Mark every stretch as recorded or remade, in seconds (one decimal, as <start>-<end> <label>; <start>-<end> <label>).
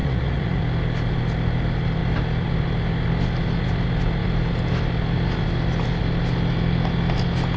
0.0-0.6 remade; 0.6-7.6 recorded